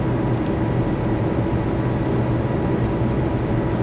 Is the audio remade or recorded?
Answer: recorded